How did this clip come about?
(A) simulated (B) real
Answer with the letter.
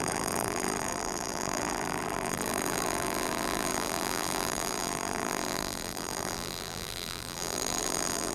A